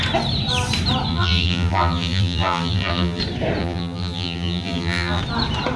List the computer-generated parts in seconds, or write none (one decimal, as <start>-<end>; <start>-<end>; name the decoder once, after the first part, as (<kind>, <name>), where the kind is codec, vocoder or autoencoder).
1.1-3.2 (vocoder, BigVGAN v2); 3.6-5.2